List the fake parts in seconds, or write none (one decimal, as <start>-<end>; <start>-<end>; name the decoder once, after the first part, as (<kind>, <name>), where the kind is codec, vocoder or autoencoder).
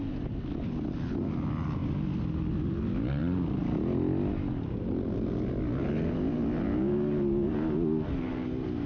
none